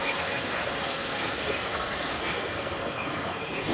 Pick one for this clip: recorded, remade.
remade